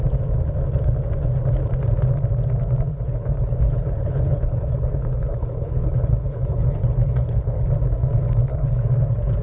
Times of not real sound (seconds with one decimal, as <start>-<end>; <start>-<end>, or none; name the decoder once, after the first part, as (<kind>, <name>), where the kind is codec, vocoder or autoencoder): 2.9-7.6 (codec, HILCodec); 8.5-9.4